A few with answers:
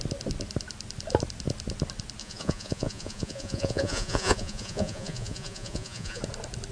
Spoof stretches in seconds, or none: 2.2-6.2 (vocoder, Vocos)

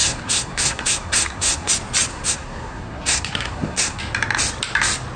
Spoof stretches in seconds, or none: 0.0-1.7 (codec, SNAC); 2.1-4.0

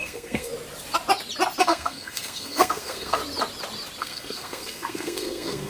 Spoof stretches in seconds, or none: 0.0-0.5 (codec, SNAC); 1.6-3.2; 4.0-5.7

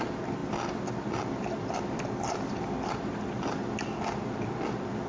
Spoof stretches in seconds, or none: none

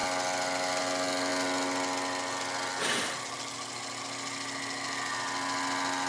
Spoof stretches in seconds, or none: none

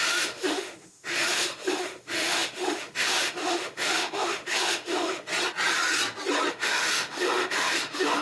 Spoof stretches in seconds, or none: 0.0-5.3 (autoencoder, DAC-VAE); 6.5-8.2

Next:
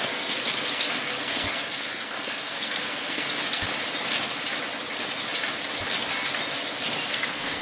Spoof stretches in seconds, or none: 0.0-3.7 (codec, SNAC); 7.1-7.6